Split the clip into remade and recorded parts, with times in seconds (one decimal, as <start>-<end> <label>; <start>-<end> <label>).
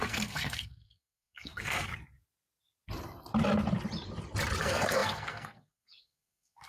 0.0-1.9 remade; 1.9-4.6 recorded; 4.6-6.7 remade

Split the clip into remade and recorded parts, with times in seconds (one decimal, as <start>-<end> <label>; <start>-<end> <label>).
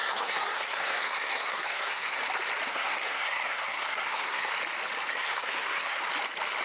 0.0-2.2 remade; 2.2-2.7 recorded; 2.7-4.5 remade; 4.5-5.1 recorded; 5.1-6.0 remade; 6.0-6.6 recorded